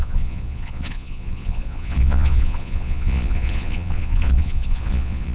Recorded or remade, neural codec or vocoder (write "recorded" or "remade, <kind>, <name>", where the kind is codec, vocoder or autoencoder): remade, vocoder, Vocos